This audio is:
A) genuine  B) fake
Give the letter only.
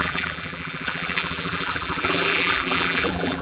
B